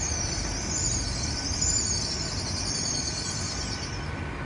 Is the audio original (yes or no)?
yes